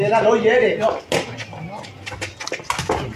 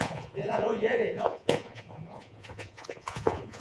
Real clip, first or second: first